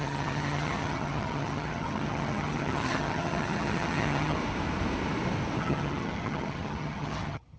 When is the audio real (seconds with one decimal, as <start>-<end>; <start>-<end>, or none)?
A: 4.4-5.6

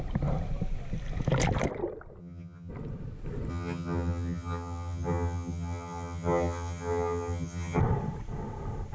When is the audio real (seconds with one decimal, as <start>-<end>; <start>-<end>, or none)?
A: 0.0-2.2; 2.7-3.5; 7.8-8.9

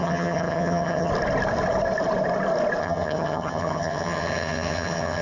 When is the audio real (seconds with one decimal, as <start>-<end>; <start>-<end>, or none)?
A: 1.1-2.8

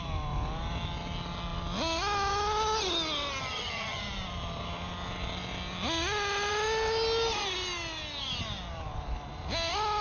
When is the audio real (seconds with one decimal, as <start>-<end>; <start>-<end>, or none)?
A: 0.0-3.4; 4.0-10.0

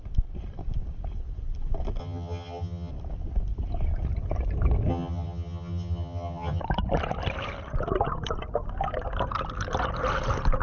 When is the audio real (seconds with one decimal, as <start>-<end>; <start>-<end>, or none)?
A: 0.0-2.0; 2.9-4.9; 6.6-10.6